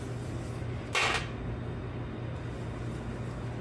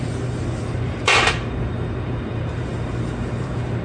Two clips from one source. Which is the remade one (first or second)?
second